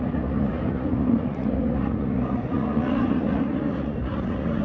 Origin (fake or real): fake